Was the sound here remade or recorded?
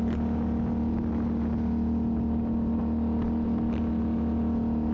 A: recorded